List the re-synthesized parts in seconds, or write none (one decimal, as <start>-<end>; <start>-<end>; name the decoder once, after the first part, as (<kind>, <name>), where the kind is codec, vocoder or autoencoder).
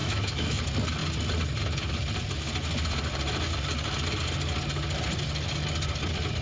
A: 0.0-0.6 (autoencoder, DAC-VAE)